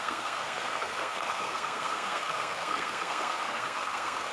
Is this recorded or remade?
remade